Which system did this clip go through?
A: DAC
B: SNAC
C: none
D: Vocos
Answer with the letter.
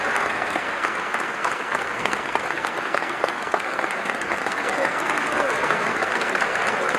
B